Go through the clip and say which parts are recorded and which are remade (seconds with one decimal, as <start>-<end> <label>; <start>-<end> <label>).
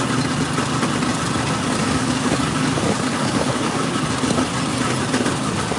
0.0-1.8 recorded; 1.8-3.9 remade; 3.9-5.8 recorded